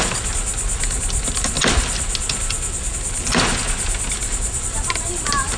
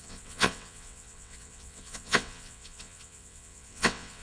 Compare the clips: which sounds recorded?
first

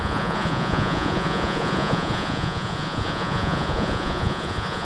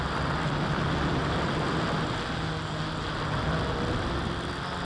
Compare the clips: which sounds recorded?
second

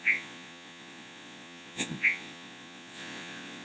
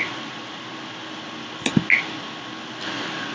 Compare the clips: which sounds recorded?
second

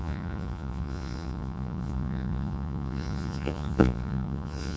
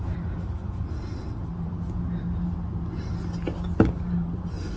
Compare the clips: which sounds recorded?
second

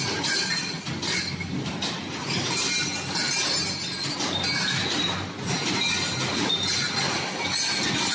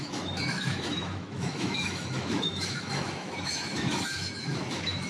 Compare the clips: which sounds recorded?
first